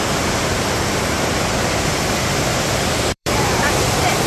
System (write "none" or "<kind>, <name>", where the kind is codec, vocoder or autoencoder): vocoder, BigVGAN v2